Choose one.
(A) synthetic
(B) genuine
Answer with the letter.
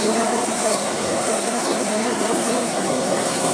A